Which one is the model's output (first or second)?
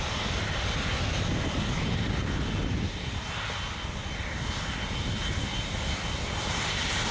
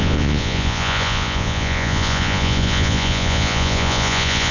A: second